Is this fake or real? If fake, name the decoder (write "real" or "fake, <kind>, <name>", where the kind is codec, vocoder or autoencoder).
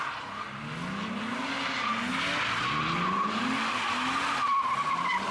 real